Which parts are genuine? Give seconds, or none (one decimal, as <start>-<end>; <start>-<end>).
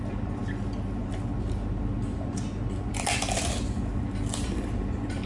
0.4-2.8